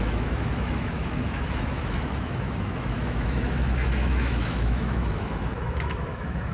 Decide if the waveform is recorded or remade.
remade